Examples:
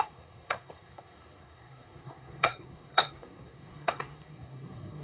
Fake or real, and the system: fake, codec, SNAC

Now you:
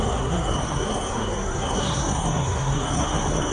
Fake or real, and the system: fake, codec, SNAC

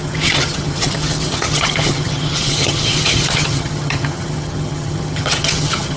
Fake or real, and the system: fake, vocoder, HiFi-GAN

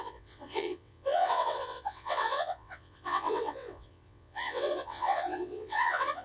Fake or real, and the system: fake, vocoder, WaveNeXt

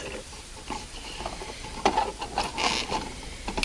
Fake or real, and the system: real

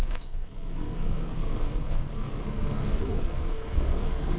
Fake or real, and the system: fake, codec, SNAC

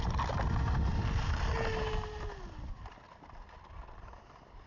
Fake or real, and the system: real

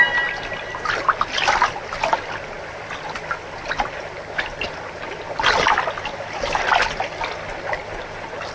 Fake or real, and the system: real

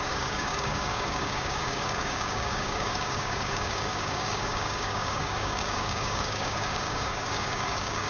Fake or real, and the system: fake, codec, DAC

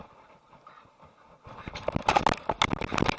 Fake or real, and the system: real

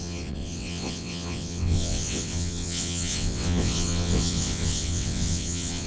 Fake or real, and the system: fake, vocoder, WaveNeXt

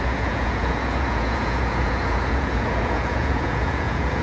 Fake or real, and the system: fake, vocoder, Vocos